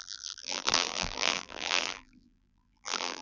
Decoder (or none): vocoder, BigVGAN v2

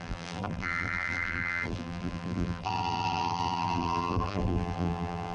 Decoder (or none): vocoder, BigVGAN v2